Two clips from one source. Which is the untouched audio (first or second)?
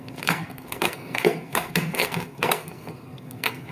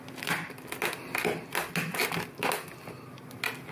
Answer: second